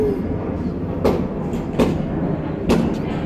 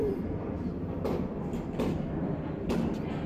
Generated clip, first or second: second